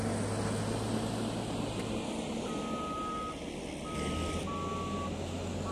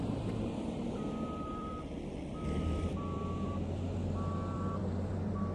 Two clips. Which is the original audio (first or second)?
first